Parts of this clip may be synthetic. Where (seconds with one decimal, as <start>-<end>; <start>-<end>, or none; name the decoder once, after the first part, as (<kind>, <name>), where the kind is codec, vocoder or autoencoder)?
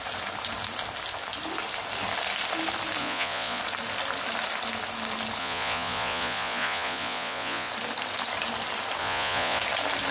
3.0-3.6 (vocoder, Vocos); 5.4-7.7; 9.0-9.6